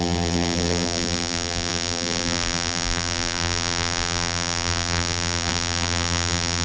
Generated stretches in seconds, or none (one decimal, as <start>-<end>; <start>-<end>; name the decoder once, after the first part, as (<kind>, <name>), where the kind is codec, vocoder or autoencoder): 0.0-6.6 (vocoder, BigVGAN v2)